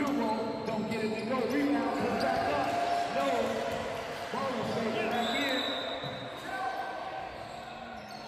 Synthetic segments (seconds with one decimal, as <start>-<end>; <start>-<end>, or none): 5.8-6.8